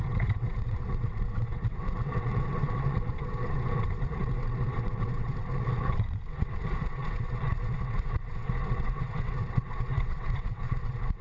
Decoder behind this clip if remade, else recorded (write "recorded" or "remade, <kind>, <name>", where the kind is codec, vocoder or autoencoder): remade, vocoder, WaveNeXt